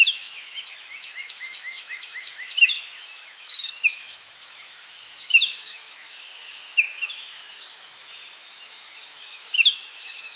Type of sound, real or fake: fake